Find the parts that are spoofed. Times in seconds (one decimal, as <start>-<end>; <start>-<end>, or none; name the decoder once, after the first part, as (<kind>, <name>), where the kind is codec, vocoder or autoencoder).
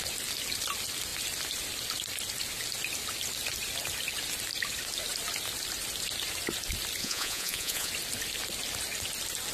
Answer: 7.0-7.9 (vocoder, Vocos)